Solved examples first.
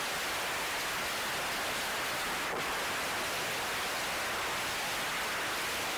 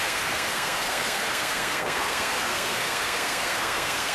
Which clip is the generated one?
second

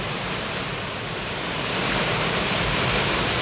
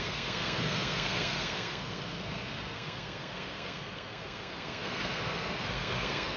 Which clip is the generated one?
second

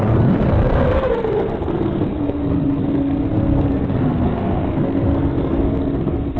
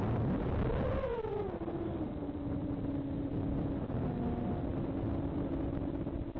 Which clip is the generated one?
first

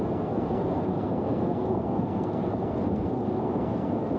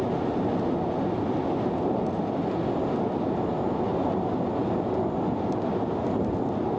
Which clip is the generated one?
first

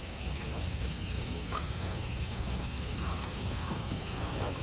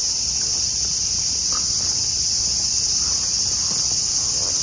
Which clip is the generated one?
first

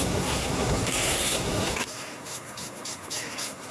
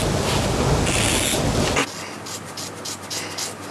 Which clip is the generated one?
first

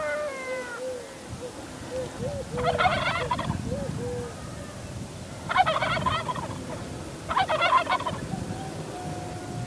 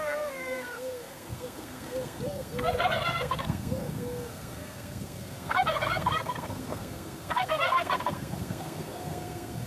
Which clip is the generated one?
second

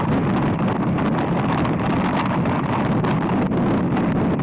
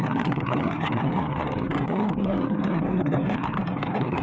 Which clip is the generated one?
second